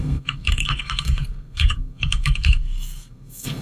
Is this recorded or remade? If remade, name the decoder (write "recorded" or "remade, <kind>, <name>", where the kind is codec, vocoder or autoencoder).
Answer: remade, codec, SNAC